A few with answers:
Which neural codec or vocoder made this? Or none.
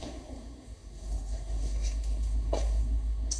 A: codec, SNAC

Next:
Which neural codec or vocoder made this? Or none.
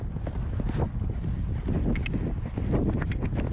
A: none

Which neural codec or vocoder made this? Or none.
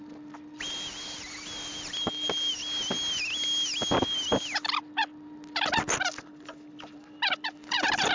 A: none